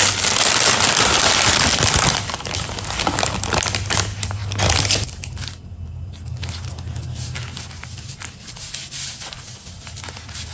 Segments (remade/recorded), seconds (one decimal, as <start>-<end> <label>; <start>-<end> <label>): 0.0-10.5 recorded

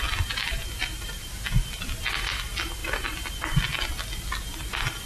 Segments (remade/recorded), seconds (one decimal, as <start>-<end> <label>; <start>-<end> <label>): 0.0-0.6 recorded; 0.6-1.3 remade; 1.3-2.8 recorded; 2.8-3.4 remade; 3.4-5.1 recorded